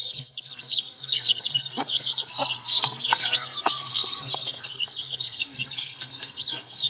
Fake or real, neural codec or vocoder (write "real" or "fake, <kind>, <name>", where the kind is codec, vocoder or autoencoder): fake, codec, SNAC